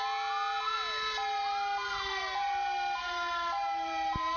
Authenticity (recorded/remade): recorded